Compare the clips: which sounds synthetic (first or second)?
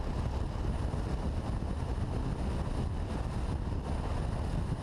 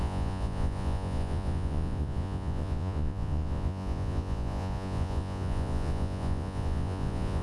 second